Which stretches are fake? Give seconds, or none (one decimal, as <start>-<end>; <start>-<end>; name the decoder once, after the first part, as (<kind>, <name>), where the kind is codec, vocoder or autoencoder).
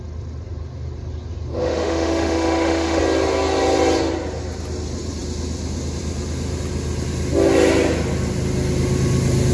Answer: 1.5-3.0 (autoencoder, DAC-VAE)